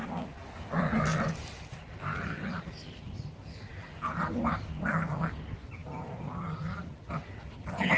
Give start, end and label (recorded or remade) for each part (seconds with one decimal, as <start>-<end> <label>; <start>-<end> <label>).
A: 0.0-8.0 recorded